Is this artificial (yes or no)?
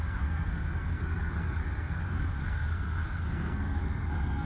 yes